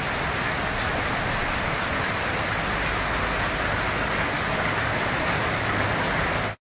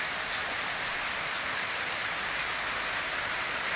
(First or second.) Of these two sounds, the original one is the first